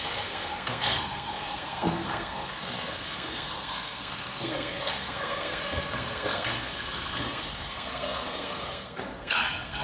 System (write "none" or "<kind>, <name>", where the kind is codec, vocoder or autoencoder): codec, SNAC